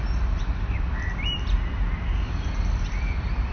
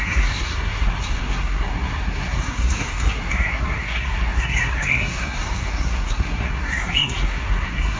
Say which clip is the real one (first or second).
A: first